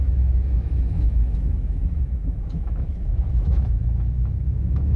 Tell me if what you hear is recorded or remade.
remade